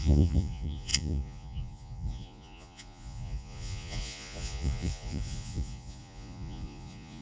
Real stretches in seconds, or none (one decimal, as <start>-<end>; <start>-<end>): none